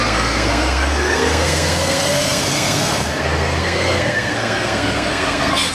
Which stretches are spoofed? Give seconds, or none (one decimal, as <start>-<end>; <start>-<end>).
0.0-5.7